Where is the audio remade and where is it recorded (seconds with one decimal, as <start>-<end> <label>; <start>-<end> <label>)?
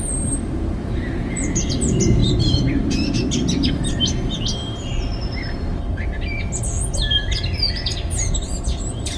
0.0-2.2 remade; 2.2-3.7 recorded; 3.7-4.9 remade; 4.9-7.1 recorded; 7.1-9.2 remade